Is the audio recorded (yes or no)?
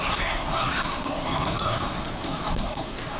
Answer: no